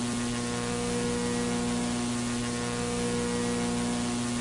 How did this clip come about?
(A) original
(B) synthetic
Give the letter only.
A